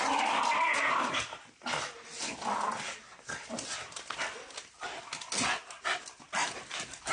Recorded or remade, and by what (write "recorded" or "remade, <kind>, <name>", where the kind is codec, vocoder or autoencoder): recorded